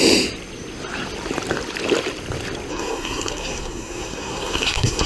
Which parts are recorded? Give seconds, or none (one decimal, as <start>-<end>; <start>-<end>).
0.0-2.7

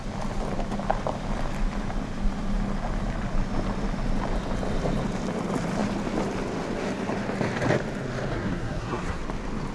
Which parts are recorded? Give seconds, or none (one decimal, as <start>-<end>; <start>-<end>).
0.0-8.3; 9.2-9.7

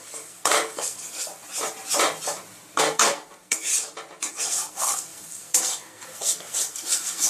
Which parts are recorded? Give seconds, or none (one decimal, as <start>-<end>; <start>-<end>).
1.3-2.8; 3.7-4.3

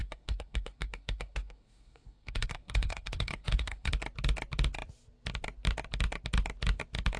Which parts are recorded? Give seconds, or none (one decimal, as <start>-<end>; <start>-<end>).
3.9-7.2

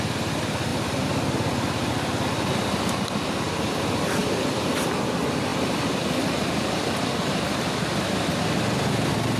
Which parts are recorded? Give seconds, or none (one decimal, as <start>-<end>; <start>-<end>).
0.0-9.4

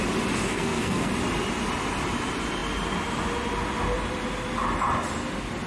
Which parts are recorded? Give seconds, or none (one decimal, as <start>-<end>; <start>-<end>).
0.0-0.5; 1.1-5.7